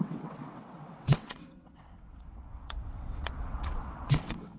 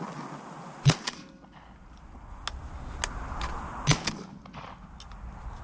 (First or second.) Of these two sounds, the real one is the second